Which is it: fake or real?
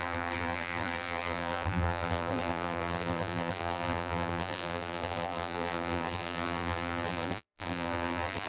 fake